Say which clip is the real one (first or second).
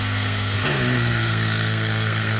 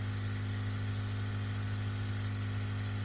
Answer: second